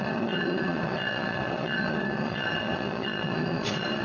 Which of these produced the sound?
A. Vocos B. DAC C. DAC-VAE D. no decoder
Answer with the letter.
A